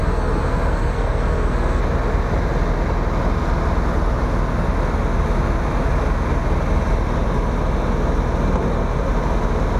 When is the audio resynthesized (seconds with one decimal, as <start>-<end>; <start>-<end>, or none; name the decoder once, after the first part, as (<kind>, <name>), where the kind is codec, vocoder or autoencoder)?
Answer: 0.0-1.8 (codec, SNAC)